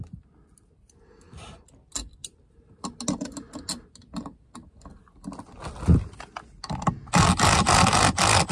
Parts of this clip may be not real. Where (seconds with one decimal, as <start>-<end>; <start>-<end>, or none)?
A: none